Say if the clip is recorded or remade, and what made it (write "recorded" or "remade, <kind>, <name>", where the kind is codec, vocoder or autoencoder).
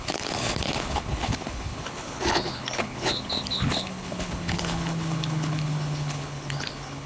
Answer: remade, codec, HILCodec